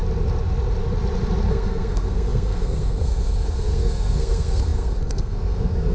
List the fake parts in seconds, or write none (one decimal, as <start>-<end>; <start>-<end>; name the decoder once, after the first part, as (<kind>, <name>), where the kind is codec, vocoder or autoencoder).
1.5-5.9 (codec, SNAC)